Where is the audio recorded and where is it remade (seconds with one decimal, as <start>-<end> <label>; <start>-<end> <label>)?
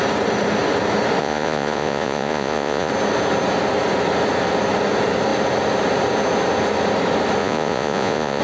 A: 0.0-1.2 recorded; 1.2-2.9 remade; 2.9-7.4 recorded; 7.4-8.4 remade